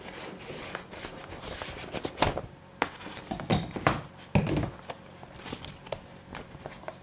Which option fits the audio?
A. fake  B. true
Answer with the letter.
B